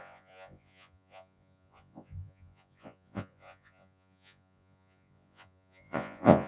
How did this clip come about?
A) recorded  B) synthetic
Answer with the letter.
B